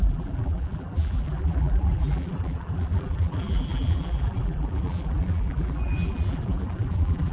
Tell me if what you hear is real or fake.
fake